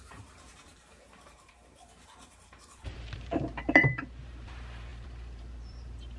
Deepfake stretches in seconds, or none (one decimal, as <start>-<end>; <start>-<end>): 0.0-6.2